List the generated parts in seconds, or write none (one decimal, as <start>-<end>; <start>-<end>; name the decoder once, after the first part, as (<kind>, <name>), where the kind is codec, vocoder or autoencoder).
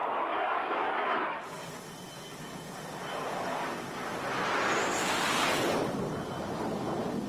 0.0-1.7 (codec, DAC)